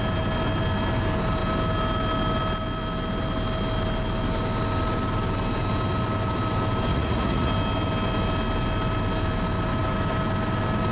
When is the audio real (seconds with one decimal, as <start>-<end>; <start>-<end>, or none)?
0.0-6.9; 7.5-10.9